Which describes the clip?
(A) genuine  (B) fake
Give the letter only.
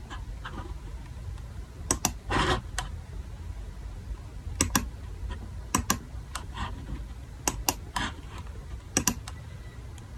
A